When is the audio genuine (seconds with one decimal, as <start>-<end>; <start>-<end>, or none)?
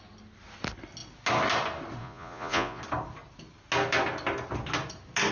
0.0-2.0; 2.8-5.3